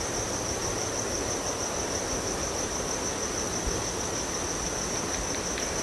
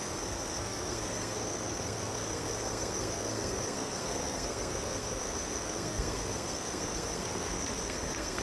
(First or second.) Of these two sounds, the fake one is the second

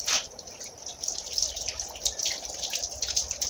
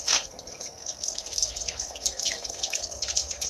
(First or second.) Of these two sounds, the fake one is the second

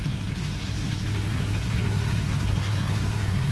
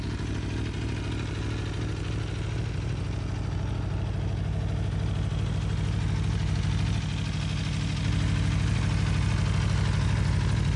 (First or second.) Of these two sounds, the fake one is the first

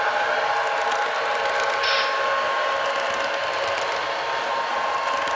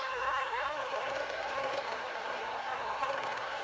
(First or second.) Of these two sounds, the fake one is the second